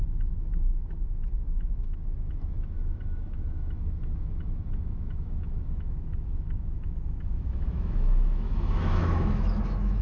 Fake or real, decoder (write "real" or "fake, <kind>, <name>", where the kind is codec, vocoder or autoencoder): fake, autoencoder, DAC-VAE